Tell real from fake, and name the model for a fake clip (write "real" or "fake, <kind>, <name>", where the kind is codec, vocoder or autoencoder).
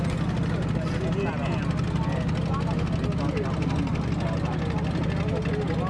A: real